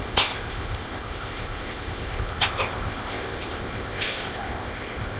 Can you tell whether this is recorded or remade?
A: remade